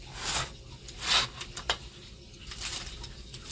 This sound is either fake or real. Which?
real